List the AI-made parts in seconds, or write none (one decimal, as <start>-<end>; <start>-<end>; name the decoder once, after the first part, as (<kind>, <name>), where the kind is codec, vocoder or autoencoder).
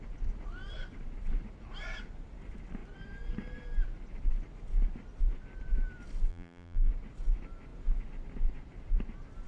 6.3-6.9 (vocoder, BigVGAN v2)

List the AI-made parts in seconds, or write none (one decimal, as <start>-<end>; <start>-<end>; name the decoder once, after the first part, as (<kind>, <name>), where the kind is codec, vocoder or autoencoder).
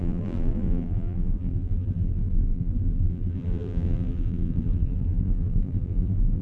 0.0-6.4 (vocoder, BigVGAN v2)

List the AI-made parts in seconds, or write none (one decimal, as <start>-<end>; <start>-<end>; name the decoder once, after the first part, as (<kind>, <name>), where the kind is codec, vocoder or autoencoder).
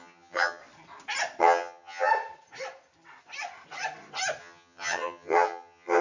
0.0-0.6 (vocoder, HiFi-GAN); 1.4-2.1; 4.4-6.0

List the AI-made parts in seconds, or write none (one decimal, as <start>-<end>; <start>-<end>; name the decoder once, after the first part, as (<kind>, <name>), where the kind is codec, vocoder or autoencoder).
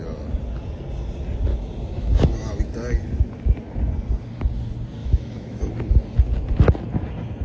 1.5-2.6 (autoencoder, DAC-VAE); 5.0-5.7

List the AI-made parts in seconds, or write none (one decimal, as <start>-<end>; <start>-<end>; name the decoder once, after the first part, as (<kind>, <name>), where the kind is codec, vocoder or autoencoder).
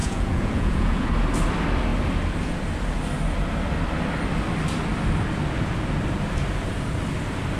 0.0-1.1 (vocoder, Vocos)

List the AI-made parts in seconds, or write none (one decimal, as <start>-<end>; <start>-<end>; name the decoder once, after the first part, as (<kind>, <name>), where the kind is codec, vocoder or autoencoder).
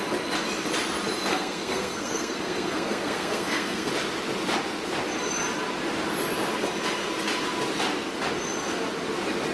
1.3-3.9 (codec, SNAC)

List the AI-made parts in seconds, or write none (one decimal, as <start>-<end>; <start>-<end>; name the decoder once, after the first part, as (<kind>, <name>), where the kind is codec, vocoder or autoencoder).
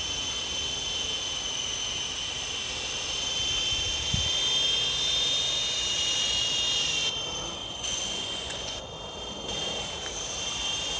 7.6-8.9 (vocoder, Vocos)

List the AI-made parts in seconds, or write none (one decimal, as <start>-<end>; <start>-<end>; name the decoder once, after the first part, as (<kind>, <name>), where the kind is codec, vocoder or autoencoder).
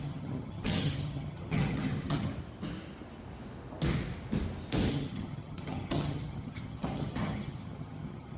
0.0-2.3 (vocoder, HiFi-GAN); 4.9-8.4